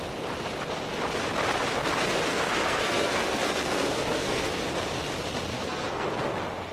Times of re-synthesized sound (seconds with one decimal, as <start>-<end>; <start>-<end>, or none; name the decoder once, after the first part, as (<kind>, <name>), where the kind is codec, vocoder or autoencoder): 2.3-4.6 (codec, SNAC); 5.5-6.2

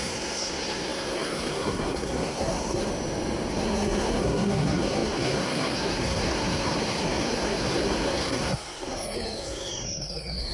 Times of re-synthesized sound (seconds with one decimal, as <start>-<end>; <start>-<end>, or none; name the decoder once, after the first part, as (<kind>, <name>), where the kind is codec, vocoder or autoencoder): 0.0-2.9 (codec, SNAC); 3.5-10.5

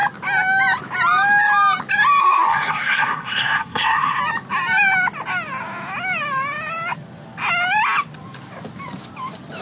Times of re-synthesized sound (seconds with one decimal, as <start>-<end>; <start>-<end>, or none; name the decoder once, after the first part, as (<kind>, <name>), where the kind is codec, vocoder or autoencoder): 2.2-4.2 (codec, SNAC)

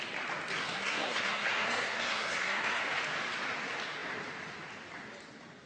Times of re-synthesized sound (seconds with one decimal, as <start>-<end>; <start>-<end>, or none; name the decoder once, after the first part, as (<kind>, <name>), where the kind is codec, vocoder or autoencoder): 0.6-2.8 (codec, SNAC)